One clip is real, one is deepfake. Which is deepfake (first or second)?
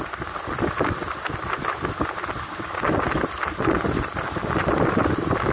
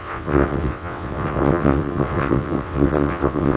second